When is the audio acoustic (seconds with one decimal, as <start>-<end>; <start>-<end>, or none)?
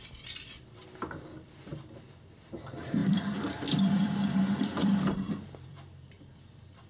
1.7-2.3